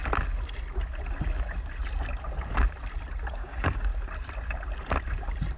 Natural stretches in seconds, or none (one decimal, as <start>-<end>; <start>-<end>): 0.0-3.3; 3.9-5.6